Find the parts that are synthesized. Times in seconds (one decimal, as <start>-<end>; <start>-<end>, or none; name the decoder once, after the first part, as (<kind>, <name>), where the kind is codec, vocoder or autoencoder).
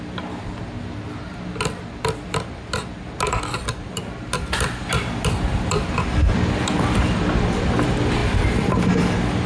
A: none